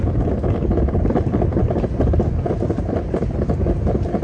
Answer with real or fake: real